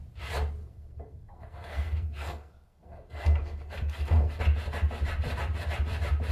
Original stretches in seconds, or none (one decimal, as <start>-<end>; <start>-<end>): 0.0-0.6; 4.4-6.3